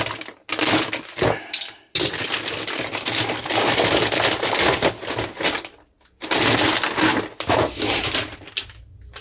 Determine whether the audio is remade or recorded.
recorded